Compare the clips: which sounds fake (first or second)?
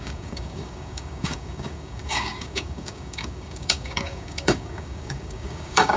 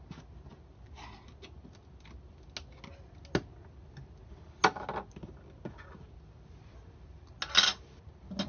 first